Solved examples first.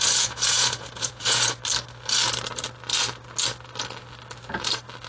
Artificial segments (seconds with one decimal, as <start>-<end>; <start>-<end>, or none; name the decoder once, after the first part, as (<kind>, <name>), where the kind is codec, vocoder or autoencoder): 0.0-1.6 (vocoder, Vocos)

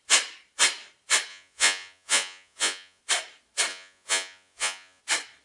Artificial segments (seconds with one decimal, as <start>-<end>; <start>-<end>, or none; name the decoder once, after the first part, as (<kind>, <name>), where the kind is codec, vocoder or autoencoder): 1.3-3.0 (vocoder, Vocos); 3.7-5.0

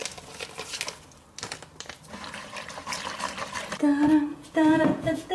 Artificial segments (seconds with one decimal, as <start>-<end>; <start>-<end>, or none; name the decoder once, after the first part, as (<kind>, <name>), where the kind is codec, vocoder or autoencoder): 4.3-5.3 (vocoder, Vocos)

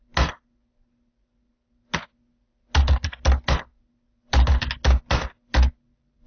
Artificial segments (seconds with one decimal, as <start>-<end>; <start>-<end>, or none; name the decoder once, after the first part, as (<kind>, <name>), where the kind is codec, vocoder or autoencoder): none

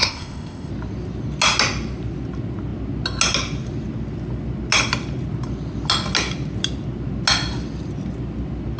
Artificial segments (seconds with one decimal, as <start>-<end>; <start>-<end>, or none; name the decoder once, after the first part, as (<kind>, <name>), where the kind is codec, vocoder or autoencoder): 0.0-0.7 (codec, ZipCodec)

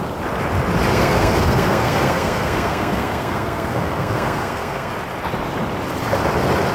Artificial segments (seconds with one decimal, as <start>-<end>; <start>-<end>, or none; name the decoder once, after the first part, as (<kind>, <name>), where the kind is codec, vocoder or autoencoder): 0.9-4.9 (codec, SNAC)